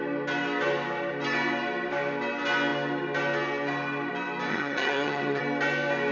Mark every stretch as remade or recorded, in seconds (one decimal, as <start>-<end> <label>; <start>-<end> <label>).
0.0-4.5 recorded; 4.5-5.4 remade; 5.4-6.1 recorded